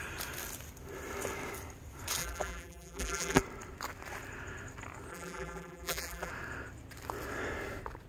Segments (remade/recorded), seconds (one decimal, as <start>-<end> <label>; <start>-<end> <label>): 0.0-2.2 recorded; 2.2-3.4 remade; 3.4-5.1 recorded; 5.1-6.3 remade; 6.3-8.1 recorded

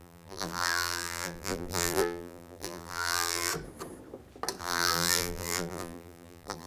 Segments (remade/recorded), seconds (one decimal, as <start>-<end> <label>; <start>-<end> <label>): 0.0-3.5 remade; 3.5-4.6 recorded; 4.6-6.7 remade

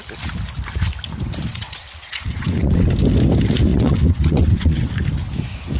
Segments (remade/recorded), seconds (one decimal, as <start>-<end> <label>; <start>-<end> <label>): 0.0-1.5 recorded; 1.5-2.9 remade; 2.9-3.7 recorded; 3.7-4.9 remade; 4.9-5.8 recorded

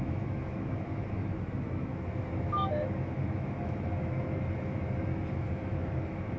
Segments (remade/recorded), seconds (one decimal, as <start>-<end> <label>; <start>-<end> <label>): 0.0-6.4 remade

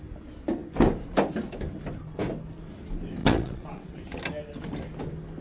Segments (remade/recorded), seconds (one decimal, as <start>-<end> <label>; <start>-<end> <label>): 0.0-3.2 recorded; 3.2-4.0 remade; 4.0-5.4 recorded

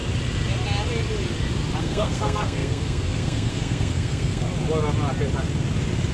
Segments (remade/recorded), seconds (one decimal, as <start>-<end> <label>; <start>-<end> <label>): 0.0-1.8 recorded; 1.8-4.5 remade; 4.5-6.1 recorded

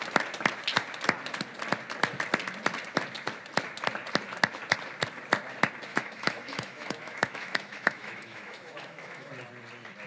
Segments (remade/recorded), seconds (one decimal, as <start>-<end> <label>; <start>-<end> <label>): 0.0-5.9 recorded; 5.9-9.3 remade; 9.3-10.1 recorded

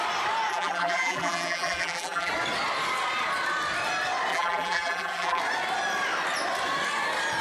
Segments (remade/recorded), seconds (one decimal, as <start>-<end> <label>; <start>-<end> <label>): 0.0-0.5 recorded; 0.5-2.3 remade; 2.3-4.3 recorded; 4.3-5.4 remade; 5.4-7.4 recorded